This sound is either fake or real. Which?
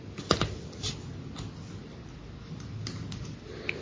real